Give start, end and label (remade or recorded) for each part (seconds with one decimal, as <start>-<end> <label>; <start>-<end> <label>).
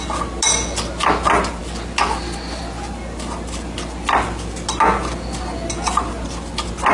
0.0-6.9 recorded